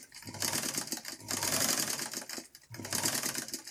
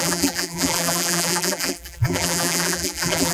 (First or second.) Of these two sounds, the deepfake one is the second